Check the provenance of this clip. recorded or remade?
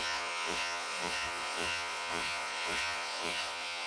remade